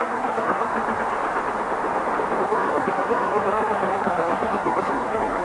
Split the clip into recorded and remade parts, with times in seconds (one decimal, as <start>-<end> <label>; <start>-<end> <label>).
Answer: 0.0-0.7 remade; 0.7-2.4 recorded; 2.4-5.4 remade